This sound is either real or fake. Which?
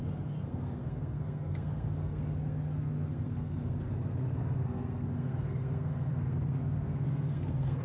fake